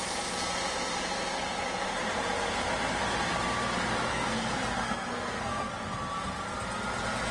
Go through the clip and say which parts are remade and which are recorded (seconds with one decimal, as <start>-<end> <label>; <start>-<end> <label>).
0.0-4.1 recorded; 4.1-5.7 remade; 5.7-7.3 recorded

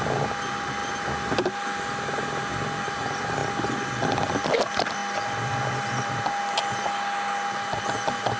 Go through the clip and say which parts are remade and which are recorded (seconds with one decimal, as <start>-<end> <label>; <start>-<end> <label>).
0.0-8.4 recorded

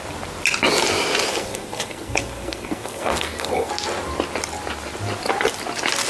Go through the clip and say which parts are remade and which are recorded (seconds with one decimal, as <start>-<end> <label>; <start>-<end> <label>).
0.0-1.3 recorded; 1.3-3.7 remade; 3.7-6.1 recorded

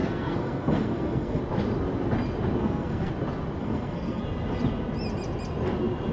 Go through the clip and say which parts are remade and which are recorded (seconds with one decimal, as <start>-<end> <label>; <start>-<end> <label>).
0.0-1.4 remade; 1.4-2.6 recorded; 2.6-3.1 remade; 3.1-3.6 recorded; 3.6-4.2 remade; 4.2-6.1 recorded

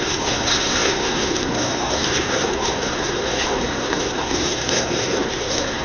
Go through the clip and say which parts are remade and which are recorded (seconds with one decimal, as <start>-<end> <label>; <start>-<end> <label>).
0.0-5.8 remade

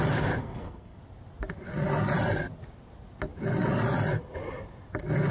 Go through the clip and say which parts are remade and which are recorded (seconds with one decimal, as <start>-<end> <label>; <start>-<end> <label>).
0.0-0.4 recorded; 0.4-1.0 remade; 1.0-5.3 recorded

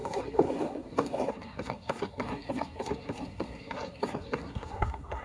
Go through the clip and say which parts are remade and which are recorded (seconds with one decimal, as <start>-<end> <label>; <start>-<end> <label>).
0.0-5.2 remade